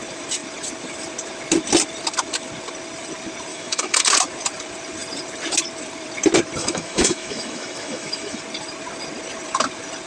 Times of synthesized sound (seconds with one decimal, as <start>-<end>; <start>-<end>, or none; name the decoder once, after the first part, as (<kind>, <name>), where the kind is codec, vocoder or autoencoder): 3.5-4.0 (autoencoder, DAC-VAE); 6.6-8.4